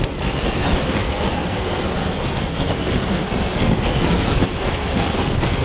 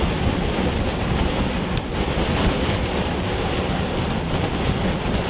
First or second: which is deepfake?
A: first